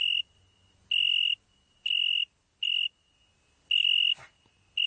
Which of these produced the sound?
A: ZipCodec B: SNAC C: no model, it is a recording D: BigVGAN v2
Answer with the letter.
C